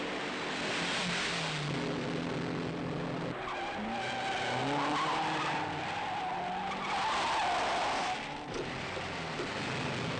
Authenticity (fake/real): real